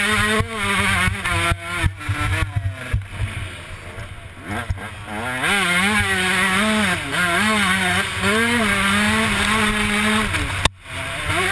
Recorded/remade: recorded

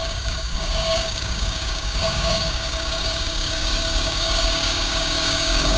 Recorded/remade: remade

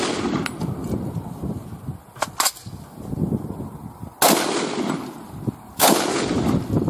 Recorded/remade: recorded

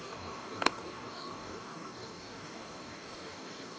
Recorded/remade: remade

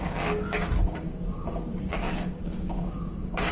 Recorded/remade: remade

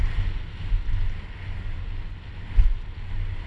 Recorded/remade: recorded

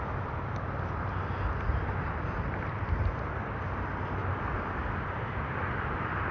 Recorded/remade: recorded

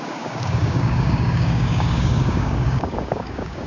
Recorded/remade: remade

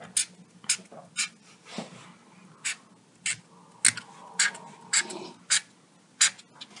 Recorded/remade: recorded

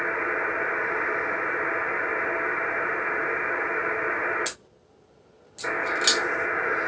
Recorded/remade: recorded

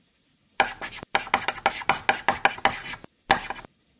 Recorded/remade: recorded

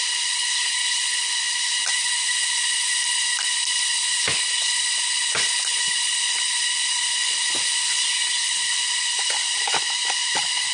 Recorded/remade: recorded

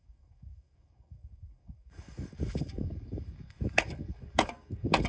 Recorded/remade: remade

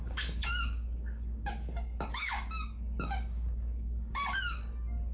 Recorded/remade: remade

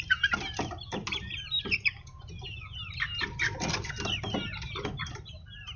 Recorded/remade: recorded